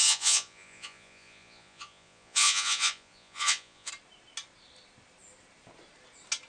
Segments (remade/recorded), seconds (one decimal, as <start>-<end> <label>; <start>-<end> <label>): 0.0-3.9 remade; 3.9-6.5 recorded